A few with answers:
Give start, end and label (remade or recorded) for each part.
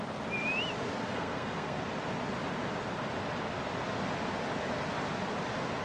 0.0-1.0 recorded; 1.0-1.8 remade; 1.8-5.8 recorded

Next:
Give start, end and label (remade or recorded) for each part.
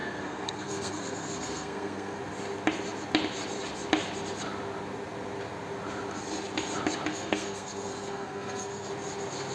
0.0-2.2 remade; 2.2-7.1 recorded; 7.1-8.9 remade; 8.9-9.5 recorded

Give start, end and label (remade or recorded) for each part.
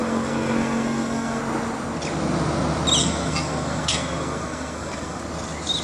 0.0-1.4 remade; 1.4-3.0 recorded; 3.0-5.2 remade; 5.2-5.8 recorded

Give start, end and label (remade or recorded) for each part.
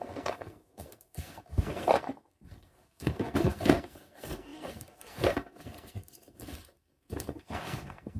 0.0-8.2 remade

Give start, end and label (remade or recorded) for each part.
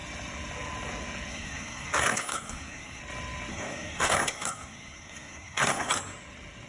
0.0-1.3 recorded; 1.3-3.0 remade; 3.0-3.5 recorded; 3.5-5.9 remade; 5.9-6.7 recorded